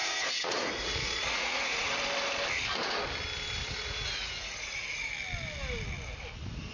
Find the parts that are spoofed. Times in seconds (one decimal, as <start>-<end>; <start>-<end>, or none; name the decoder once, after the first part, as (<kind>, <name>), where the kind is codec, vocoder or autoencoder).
0.0-1.9 (vocoder, Vocos); 3.6-5.1